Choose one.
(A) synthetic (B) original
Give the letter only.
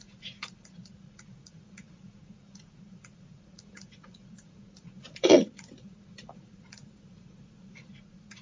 A